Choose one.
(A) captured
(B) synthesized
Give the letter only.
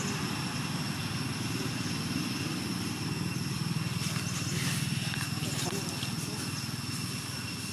A